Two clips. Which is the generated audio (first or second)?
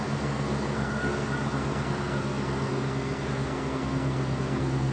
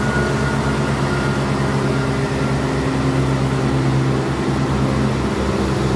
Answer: first